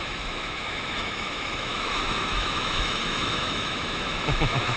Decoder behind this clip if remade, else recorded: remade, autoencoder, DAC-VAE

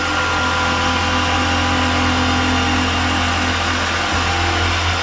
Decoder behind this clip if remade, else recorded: recorded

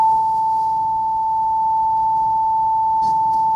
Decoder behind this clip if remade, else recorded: remade, autoencoder, DAC-VAE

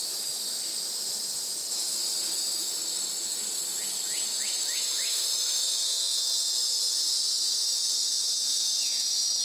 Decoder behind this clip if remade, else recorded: remade, autoencoder, DAC-VAE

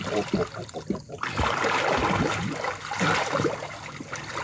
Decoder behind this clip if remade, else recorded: recorded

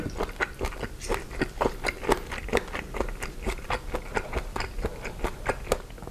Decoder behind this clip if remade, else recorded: recorded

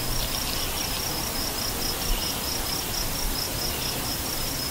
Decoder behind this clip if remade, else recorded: recorded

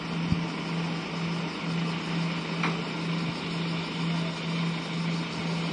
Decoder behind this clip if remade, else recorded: recorded